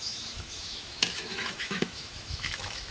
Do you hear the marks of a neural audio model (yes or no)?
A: yes